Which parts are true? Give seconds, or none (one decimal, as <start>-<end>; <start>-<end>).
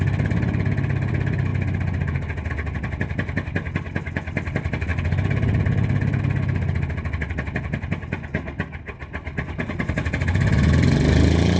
0.0-11.6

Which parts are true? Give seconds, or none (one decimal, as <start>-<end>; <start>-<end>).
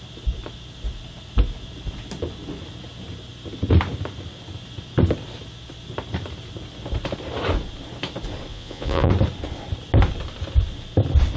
0.0-8.5; 9.1-11.4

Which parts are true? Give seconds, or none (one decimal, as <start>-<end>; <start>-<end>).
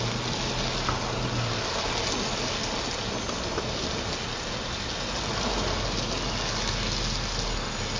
0.0-8.0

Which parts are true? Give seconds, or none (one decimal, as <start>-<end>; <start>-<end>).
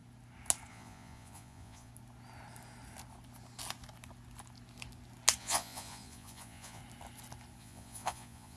0.0-0.7; 1.9-5.4; 6.8-7.6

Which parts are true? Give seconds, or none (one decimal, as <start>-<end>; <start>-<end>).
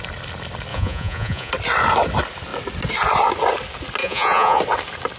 0.0-0.7; 1.5-4.0; 4.6-5.2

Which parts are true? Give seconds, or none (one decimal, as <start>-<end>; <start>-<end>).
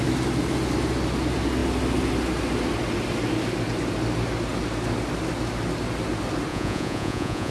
0.0-6.5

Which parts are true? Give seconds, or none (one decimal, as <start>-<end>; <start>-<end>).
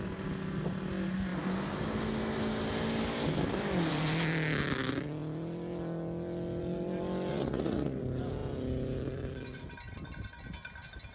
0.0-7.3; 8.0-11.1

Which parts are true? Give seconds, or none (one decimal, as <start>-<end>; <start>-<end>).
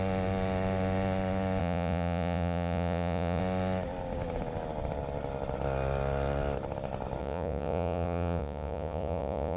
0.0-1.6; 3.4-7.2